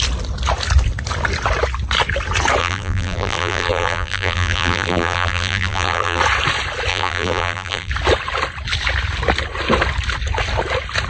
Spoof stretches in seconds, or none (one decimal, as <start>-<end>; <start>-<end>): 2.6-6.2; 6.9-7.9